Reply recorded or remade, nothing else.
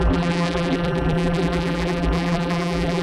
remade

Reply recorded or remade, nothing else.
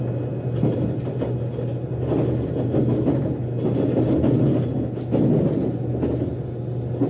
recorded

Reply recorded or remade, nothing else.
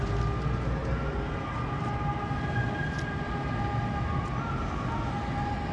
recorded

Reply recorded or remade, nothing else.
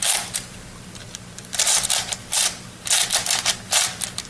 remade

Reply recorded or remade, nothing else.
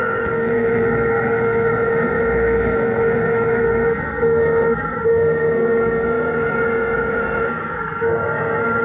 remade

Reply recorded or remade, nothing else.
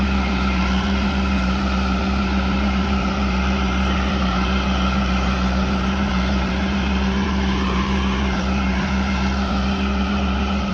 remade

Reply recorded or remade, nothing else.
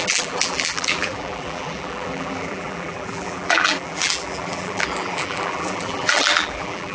remade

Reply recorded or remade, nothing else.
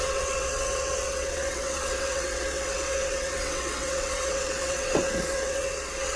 remade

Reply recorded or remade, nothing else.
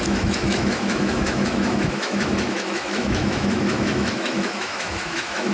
remade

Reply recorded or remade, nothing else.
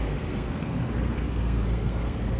remade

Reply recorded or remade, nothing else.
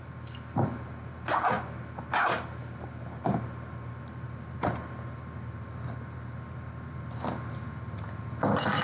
recorded